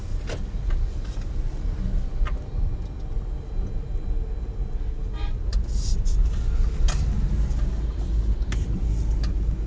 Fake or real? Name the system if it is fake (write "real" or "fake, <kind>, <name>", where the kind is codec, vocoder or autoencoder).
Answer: real